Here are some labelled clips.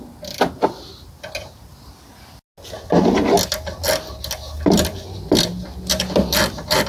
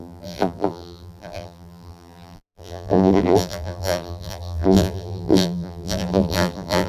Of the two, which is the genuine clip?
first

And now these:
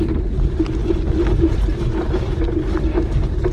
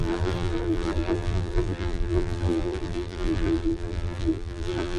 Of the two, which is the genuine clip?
first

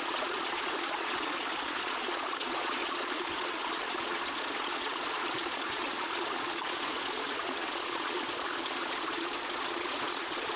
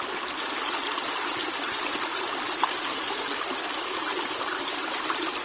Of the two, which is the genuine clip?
second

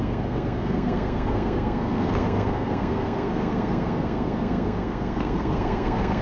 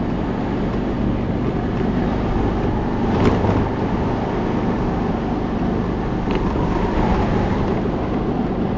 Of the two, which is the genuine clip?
second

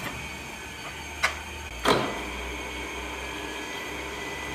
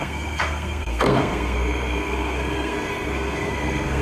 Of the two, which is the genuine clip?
first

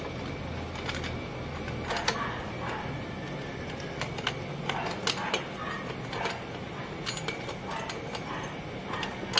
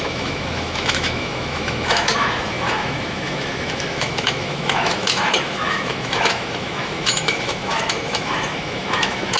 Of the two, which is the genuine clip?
first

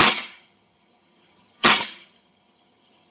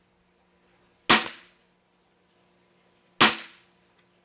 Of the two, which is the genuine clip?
second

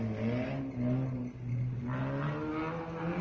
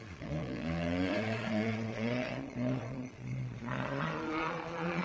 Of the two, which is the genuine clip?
first